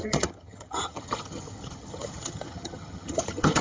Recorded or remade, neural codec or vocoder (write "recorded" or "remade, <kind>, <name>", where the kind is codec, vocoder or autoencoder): remade, vocoder, HiFi-GAN